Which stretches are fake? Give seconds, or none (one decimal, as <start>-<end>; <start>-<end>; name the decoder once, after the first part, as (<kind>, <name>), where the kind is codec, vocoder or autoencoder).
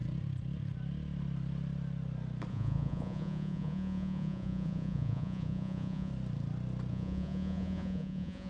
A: 2.5-6.1 (vocoder, Vocos); 6.9-8.5